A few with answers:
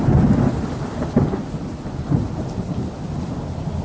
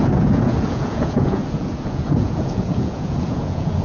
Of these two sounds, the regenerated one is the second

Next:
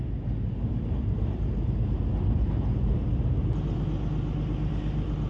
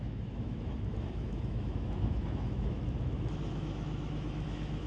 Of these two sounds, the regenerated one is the second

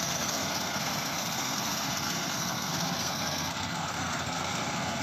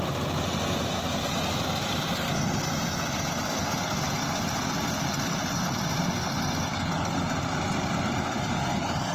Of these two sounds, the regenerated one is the first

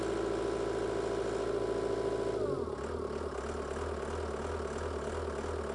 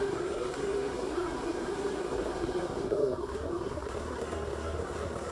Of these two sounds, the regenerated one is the second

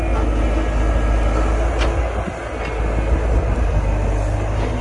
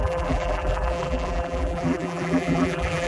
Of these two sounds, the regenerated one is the second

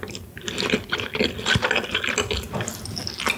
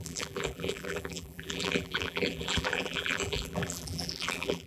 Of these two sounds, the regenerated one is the second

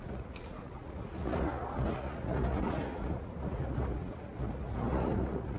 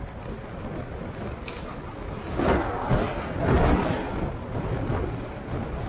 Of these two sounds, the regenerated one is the first